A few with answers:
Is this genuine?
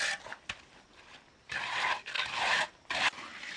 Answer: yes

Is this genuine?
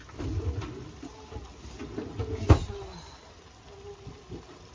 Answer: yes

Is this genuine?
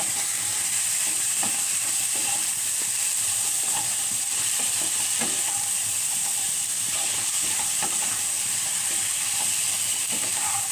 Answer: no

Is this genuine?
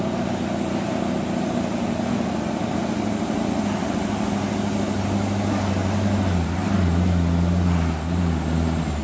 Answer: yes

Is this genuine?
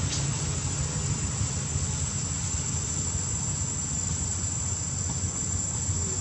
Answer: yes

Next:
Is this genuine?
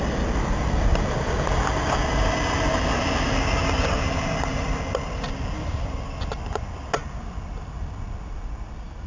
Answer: yes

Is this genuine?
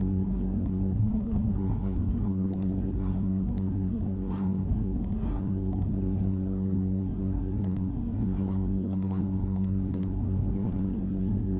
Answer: no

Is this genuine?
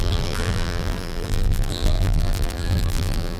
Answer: no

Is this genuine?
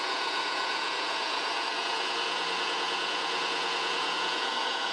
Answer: no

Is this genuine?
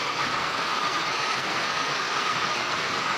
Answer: no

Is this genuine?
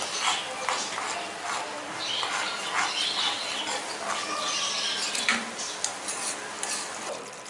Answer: yes